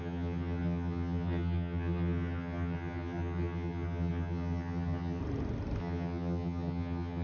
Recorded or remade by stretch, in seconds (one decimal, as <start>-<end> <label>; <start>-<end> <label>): 0.0-5.2 remade; 5.2-5.8 recorded; 5.8-7.2 remade